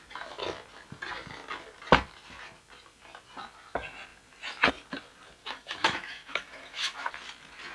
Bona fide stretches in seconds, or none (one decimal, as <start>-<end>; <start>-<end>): 0.0-5.4; 7.1-7.7